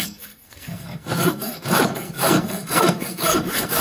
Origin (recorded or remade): remade